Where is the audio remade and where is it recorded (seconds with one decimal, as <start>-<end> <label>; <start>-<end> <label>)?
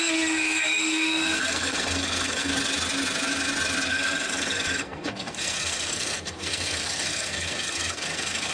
0.0-2.5 remade; 2.5-3.9 recorded; 3.9-8.5 remade